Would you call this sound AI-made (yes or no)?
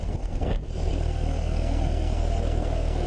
yes